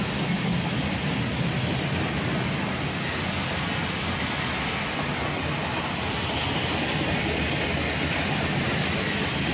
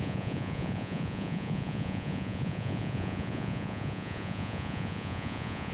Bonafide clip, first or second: first